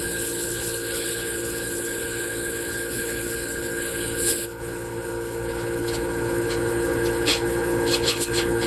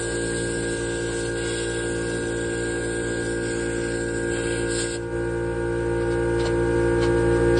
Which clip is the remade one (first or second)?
first